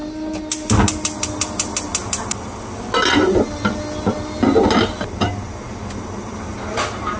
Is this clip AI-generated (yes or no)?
no